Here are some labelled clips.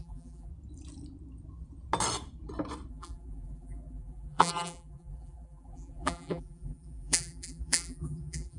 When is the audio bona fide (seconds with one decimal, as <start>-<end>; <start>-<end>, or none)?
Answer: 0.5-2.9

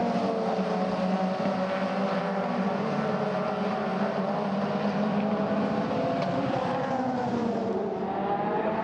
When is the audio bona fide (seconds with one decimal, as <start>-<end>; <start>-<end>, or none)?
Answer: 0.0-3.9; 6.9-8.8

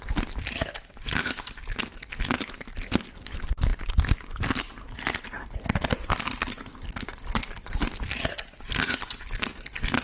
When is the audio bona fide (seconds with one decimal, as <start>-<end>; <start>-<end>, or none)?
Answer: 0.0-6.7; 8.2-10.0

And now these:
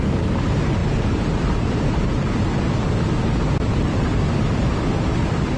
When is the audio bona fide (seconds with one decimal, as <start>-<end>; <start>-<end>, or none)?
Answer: 0.0-5.6

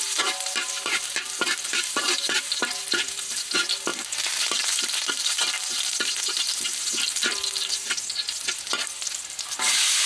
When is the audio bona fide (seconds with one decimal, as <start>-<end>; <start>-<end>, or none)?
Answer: 0.0-10.1

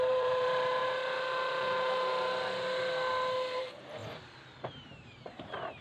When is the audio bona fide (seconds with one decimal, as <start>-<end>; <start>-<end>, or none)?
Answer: 0.8-3.6; 4.0-4.7

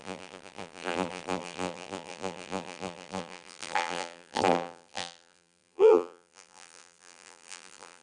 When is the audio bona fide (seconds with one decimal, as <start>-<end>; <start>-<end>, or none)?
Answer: none